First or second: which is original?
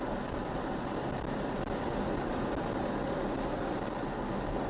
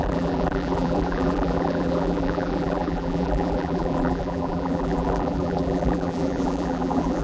first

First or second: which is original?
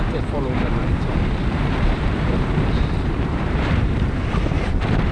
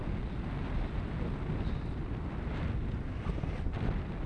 second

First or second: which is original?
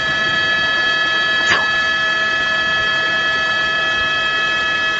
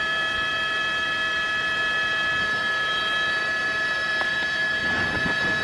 first